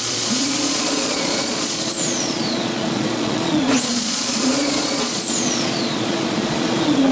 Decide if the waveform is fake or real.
fake